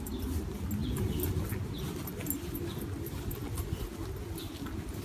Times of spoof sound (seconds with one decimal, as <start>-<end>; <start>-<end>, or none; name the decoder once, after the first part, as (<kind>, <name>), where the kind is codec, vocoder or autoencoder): none